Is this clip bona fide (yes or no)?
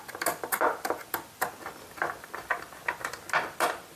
yes